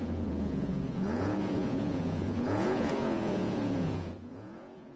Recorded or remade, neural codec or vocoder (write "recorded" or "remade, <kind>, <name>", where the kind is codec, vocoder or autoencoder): remade, vocoder, Vocos